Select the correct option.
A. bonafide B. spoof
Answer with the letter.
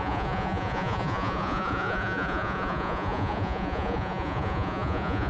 B